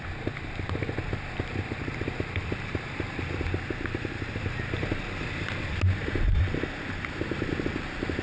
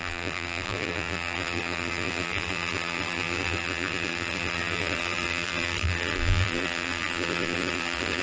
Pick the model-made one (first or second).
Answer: second